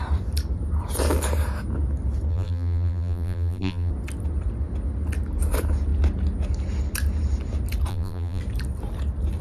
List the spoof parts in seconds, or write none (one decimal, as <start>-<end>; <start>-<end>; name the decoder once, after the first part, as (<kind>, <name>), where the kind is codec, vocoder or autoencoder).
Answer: 2.3-3.9 (vocoder, BigVGAN v2); 7.9-8.4

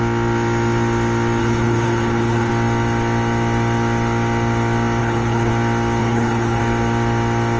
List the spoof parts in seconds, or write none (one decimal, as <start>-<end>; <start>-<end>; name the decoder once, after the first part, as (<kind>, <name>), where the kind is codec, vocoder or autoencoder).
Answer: 1.4-2.5 (codec, HILCodec); 5.0-5.5; 6.0-6.6

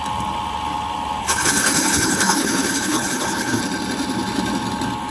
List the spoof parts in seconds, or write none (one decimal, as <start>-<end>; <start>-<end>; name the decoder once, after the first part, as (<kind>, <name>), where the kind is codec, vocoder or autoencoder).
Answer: 1.2-3.6 (codec, HILCodec)

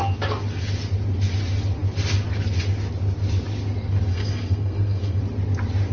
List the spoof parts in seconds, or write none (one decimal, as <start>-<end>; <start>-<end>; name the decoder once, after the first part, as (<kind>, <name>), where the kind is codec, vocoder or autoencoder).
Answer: 4.1-5.2 (codec, SNAC)

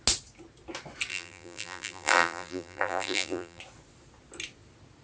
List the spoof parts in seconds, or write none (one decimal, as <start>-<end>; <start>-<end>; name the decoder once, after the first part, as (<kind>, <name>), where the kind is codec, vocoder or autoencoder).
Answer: 1.1-3.6 (vocoder, BigVGAN v2)

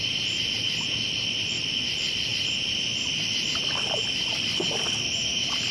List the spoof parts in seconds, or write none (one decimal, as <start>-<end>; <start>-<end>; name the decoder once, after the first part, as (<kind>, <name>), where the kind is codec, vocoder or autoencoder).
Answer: none

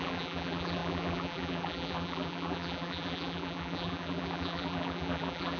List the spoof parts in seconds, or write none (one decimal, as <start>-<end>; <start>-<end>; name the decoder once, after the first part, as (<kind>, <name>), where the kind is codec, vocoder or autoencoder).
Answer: 0.0-5.6 (vocoder, BigVGAN v2)

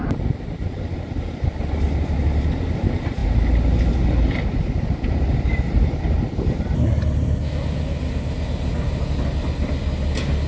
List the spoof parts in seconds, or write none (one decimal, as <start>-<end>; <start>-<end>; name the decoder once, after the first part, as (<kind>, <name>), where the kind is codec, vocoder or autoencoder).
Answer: none